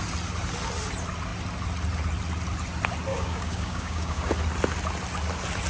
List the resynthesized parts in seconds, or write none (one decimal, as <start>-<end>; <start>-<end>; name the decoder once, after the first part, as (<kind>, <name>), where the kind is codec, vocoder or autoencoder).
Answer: 3.1-4.3 (codec, DAC)